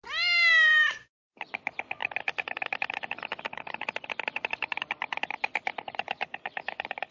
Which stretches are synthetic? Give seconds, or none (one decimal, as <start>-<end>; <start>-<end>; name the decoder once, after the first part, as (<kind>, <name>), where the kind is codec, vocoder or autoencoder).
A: none